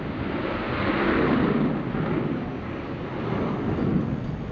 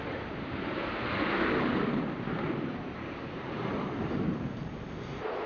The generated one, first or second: second